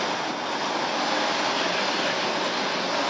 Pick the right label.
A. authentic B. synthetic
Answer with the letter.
A